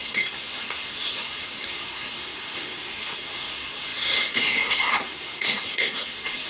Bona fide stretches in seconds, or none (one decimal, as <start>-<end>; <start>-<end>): none